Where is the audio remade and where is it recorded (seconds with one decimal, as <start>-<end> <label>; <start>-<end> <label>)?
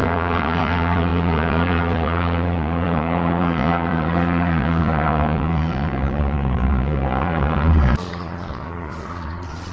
0.0-9.7 remade